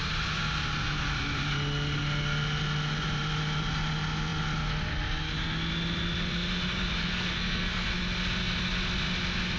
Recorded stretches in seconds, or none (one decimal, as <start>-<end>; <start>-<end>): 0.0-7.0; 7.9-9.6